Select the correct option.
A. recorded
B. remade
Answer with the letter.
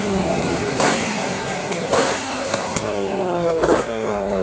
B